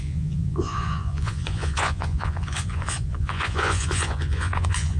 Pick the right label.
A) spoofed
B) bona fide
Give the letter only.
A